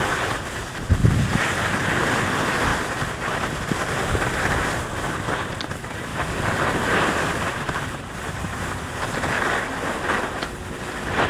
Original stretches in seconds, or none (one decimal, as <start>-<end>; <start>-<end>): 0.0-2.7; 4.0-6.1; 8.1-11.3